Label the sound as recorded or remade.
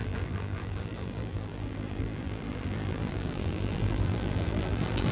remade